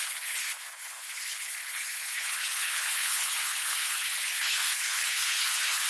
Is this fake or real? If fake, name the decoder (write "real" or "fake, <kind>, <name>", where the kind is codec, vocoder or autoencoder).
fake, codec, HILCodec